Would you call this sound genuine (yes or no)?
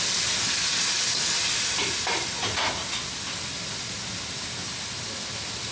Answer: yes